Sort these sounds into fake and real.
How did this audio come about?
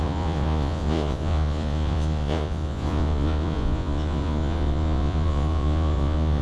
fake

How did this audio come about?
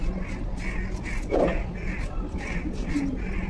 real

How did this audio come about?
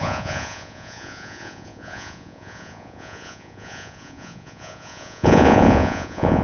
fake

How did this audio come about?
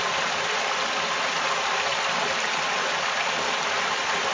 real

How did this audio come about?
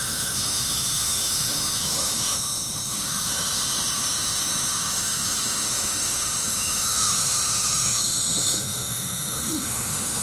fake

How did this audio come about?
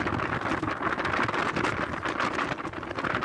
real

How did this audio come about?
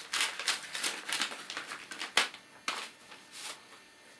real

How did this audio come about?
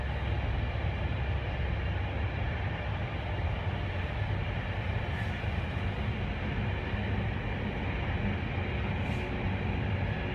real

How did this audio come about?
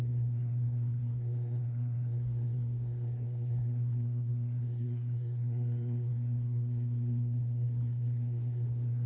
fake